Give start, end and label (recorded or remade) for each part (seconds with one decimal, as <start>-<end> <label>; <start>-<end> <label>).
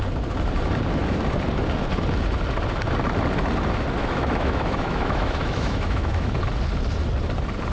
0.0-4.0 recorded; 4.0-6.3 remade; 6.3-7.7 recorded